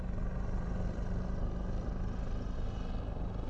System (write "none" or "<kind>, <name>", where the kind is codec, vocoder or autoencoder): none